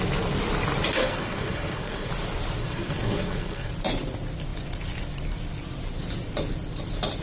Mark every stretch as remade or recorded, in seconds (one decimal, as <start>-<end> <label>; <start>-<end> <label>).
0.0-1.0 recorded; 1.0-2.1 remade; 2.1-2.6 recorded; 2.6-3.7 remade; 3.7-7.2 recorded